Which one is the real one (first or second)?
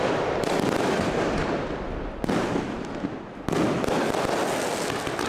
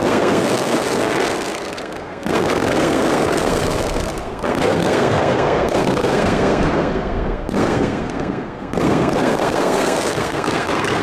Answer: first